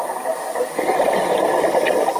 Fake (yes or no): no